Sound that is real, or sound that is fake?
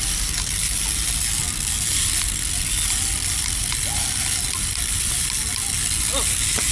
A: real